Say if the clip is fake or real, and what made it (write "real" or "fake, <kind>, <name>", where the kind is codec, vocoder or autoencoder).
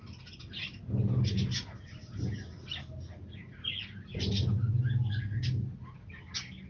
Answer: real